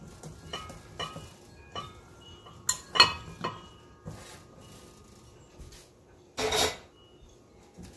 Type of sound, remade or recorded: recorded